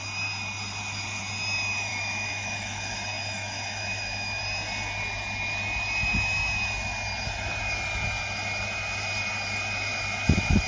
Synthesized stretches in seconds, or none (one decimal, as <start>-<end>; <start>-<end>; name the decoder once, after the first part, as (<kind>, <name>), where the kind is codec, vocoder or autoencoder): 1.9-4.4 (autoencoder, DAC-VAE)